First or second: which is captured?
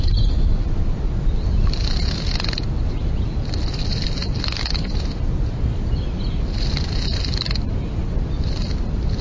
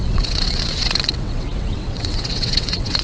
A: first